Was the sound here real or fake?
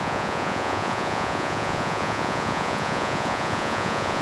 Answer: fake